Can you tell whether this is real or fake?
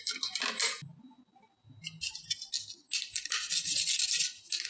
real